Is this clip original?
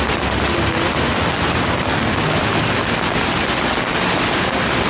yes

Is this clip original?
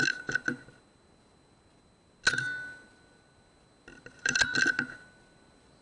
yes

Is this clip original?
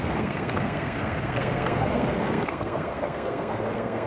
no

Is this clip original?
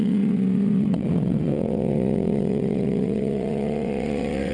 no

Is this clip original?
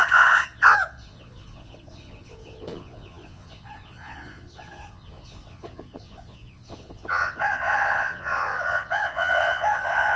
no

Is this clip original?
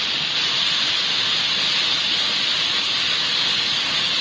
yes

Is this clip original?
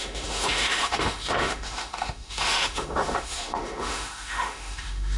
no